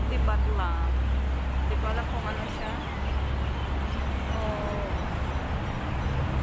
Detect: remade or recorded recorded